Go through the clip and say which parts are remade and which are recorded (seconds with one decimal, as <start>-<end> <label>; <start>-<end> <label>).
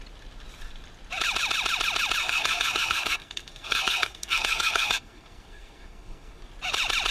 0.0-2.2 recorded; 2.2-6.5 remade; 6.5-7.1 recorded